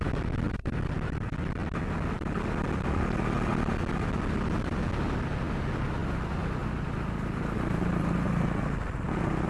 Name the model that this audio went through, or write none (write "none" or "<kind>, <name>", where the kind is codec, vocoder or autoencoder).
none